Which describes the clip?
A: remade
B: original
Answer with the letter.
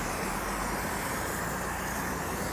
B